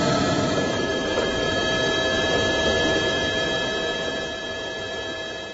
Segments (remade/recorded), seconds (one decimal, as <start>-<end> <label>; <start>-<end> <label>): 0.0-5.5 recorded